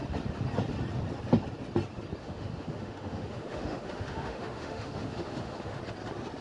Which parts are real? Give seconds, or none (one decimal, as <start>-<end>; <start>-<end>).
0.0-2.2; 5.8-6.4